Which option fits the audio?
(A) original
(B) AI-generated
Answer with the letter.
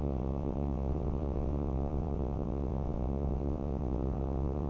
B